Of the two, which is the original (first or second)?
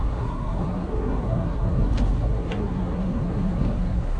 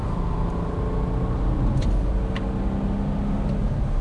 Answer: second